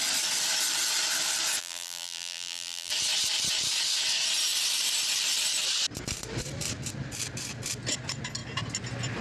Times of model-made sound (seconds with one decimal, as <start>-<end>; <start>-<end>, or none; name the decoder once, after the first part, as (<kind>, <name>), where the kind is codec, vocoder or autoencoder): 1.6-2.9 (vocoder, BigVGAN v2)